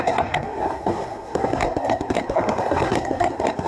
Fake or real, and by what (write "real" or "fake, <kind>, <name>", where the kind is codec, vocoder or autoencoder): fake, codec, SNAC